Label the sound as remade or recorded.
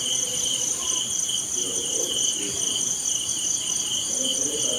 recorded